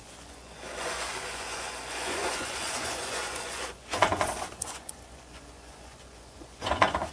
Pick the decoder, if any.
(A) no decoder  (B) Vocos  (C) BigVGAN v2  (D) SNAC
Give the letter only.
B